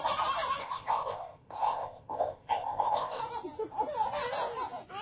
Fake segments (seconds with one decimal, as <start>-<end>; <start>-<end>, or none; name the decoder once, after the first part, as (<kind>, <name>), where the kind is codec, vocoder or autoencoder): 0.6-3.2 (codec, ZipCodec)